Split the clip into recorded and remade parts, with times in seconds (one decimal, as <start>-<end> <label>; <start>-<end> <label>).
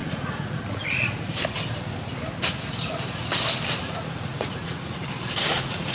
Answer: 0.0-1.3 remade; 1.3-3.8 recorded; 3.8-5.0 remade; 5.0-5.5 recorded; 5.5-5.9 remade